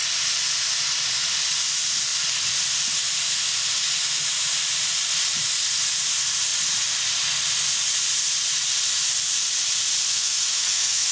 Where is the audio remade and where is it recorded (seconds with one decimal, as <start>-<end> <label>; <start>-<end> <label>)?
0.0-10.1 recorded; 10.1-11.1 remade